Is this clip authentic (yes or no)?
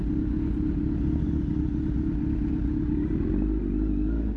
yes